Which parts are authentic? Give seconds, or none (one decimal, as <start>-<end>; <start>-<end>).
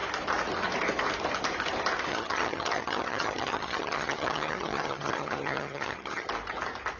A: 0.0-2.1; 6.3-7.0